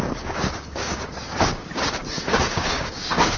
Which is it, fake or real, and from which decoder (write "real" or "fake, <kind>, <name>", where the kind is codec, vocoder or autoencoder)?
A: fake, codec, DAC